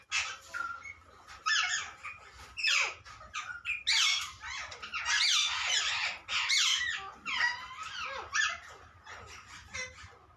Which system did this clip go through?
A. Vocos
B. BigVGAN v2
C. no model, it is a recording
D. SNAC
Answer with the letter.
C